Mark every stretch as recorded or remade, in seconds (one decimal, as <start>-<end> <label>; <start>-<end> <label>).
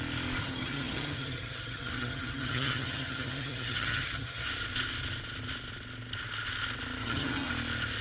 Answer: 0.0-0.4 recorded; 0.4-4.5 remade; 4.5-7.0 recorded; 7.0-7.5 remade; 7.5-8.0 recorded